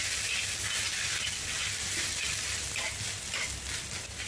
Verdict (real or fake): real